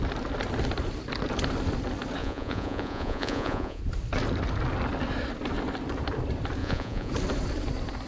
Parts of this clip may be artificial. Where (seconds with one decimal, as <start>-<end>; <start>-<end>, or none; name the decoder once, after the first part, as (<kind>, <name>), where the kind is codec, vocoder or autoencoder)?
2.2-3.8 (vocoder, Vocos); 6.6-7.1